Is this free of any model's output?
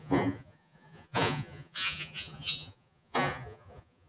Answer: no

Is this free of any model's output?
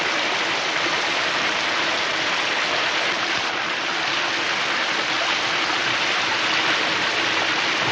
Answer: yes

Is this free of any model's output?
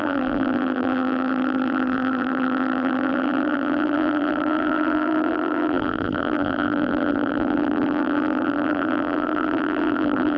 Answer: no